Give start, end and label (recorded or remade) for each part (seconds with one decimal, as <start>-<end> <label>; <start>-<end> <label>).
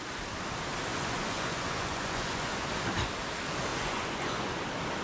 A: 0.0-0.9 recorded; 0.9-2.7 remade; 2.7-3.7 recorded; 3.7-4.6 remade; 4.6-5.0 recorded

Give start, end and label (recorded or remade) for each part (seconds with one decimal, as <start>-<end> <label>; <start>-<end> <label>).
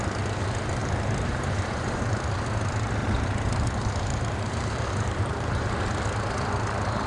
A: 0.0-0.8 recorded; 0.8-2.0 remade; 2.0-3.0 recorded; 3.0-5.7 remade; 5.7-7.1 recorded